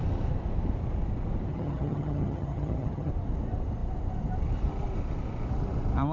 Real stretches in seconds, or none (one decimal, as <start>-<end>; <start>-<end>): 0.0-1.5; 3.1-6.1